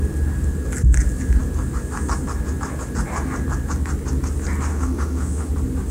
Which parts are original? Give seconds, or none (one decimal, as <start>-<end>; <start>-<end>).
0.0-4.7; 5.5-5.9

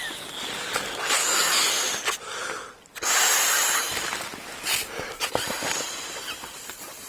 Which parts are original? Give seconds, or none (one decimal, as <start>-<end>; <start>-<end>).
0.0-1.2; 1.7-7.1

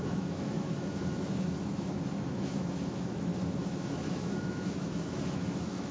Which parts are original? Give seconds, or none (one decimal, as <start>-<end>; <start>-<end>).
none

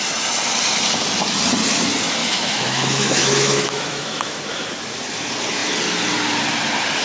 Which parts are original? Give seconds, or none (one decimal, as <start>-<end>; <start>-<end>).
0.0-2.2; 4.4-7.0

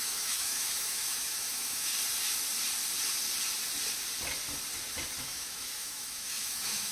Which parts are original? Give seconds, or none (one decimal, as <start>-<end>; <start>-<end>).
1.9-5.2

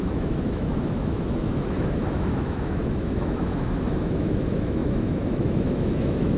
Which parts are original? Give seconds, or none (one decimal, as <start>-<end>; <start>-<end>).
none

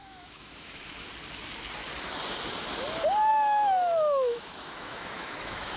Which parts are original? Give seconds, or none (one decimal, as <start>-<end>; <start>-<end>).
1.1-3.3

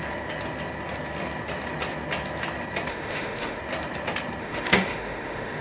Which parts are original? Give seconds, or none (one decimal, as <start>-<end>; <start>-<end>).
0.0-2.9; 3.6-4.4